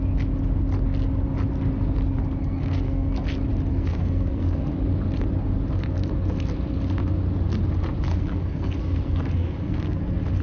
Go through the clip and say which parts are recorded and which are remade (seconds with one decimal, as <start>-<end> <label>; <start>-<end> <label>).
0.0-2.4 recorded; 2.4-3.1 remade; 3.1-3.7 recorded; 3.7-4.7 remade; 4.7-8.1 recorded; 8.1-10.0 remade; 10.0-10.4 recorded